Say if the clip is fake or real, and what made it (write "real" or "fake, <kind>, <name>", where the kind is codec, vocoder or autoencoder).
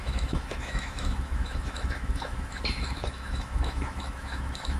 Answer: fake, autoencoder, DAC-VAE